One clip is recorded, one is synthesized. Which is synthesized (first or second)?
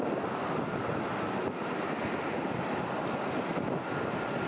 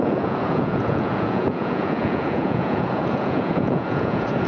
second